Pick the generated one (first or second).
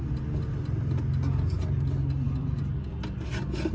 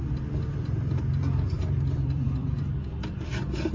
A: second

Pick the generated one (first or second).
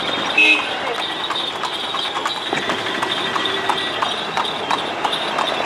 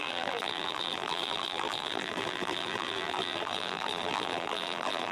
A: second